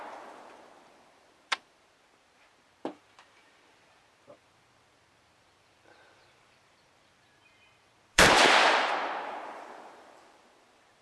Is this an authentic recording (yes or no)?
no